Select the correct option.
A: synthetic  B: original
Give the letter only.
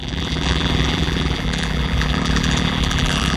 A